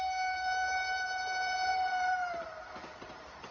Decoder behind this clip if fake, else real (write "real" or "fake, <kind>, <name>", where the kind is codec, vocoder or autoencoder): fake, vocoder, BigVGAN v2